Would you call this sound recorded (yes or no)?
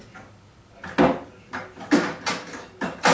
yes